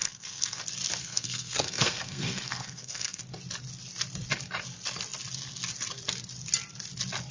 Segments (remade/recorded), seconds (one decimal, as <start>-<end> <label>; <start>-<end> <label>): 0.0-0.6 remade; 0.6-1.0 recorded; 1.0-3.2 remade; 3.2-7.3 recorded